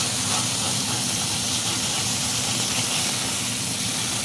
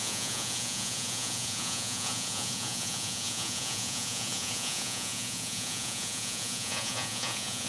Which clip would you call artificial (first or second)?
second